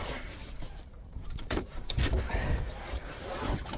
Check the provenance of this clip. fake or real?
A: fake